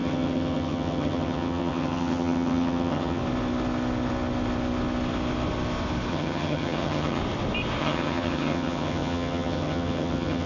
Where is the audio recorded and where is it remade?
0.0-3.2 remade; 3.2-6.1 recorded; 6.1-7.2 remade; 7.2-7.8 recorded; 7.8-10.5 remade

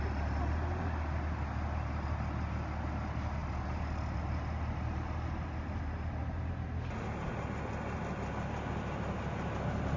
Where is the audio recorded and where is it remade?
0.0-10.0 recorded